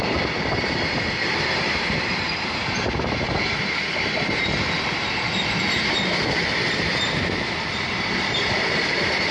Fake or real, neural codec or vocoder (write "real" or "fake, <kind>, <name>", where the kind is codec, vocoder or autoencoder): fake, vocoder, BigVGAN v2